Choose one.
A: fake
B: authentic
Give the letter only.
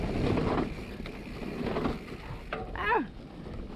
B